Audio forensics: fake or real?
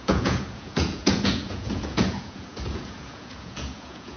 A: fake